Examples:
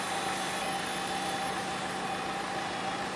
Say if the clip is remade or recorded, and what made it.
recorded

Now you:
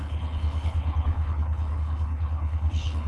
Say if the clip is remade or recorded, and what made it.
remade, codec, HILCodec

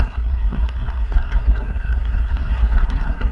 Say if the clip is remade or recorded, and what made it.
remade, codec, SNAC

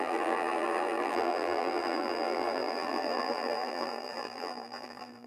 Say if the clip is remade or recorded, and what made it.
remade, vocoder, BigVGAN v2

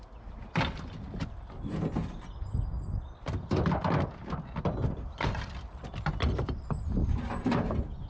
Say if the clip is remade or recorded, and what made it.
recorded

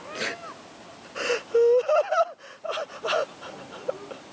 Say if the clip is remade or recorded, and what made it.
recorded